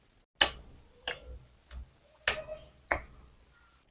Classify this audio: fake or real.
real